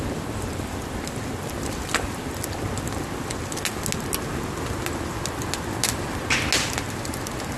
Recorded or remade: recorded